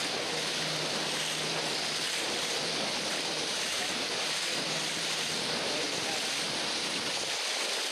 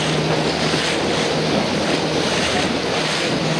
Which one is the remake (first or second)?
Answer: first